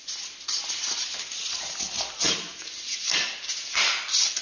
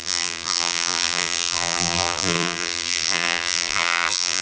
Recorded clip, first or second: first